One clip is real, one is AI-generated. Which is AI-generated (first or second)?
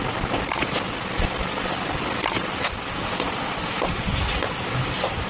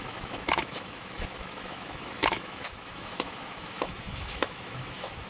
second